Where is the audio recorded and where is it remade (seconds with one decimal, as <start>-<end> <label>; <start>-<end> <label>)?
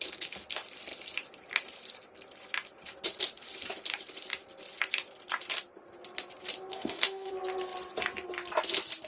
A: 0.0-6.7 recorded; 6.7-7.3 remade; 7.3-9.1 recorded